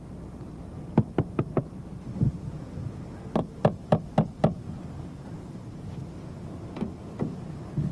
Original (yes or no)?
yes